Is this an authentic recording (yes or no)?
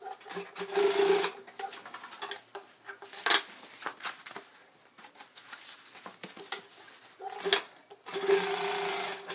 yes